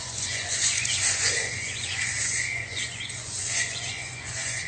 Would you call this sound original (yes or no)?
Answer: no